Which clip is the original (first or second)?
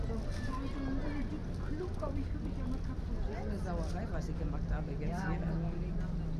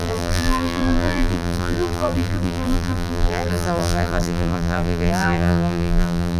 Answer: first